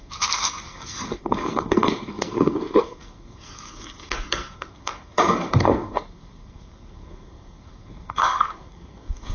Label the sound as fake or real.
fake